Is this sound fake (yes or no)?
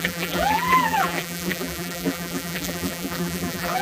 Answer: yes